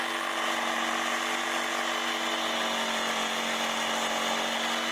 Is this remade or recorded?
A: recorded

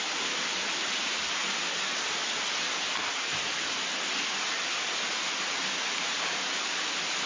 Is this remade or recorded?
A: recorded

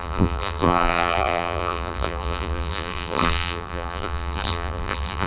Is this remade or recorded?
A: remade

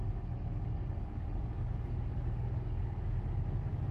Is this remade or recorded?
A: remade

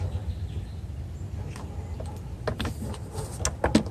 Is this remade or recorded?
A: recorded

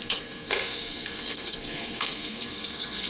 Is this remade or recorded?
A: remade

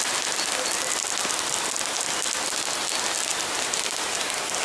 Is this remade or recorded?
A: recorded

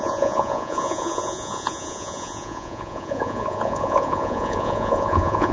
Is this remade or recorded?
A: remade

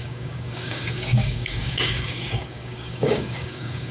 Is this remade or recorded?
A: remade